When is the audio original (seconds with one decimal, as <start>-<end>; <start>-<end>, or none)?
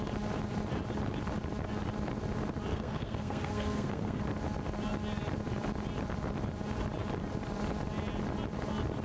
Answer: 0.0-2.7; 4.2-9.0